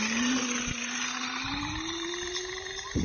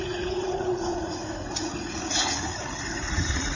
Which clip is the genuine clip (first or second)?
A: first